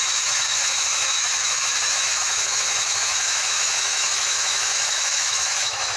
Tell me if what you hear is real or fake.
fake